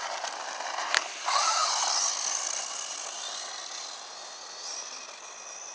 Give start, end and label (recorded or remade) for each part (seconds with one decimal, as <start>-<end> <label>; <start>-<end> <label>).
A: 0.0-5.7 recorded